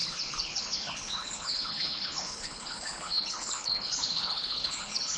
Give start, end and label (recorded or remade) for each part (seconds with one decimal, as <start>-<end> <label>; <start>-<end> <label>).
0.0-5.2 remade